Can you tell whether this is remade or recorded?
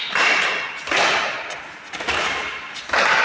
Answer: recorded